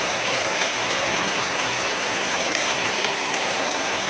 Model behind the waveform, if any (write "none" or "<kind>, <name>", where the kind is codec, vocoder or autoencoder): codec, SNAC